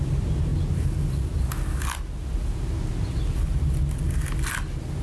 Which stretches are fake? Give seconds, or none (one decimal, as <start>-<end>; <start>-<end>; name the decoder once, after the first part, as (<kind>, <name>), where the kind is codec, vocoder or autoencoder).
none